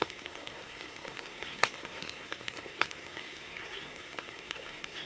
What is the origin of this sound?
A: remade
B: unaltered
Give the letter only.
A